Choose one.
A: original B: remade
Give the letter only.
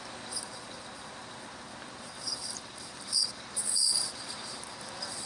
B